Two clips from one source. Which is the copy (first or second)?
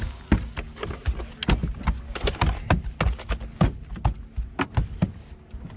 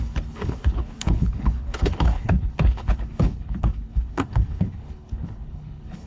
second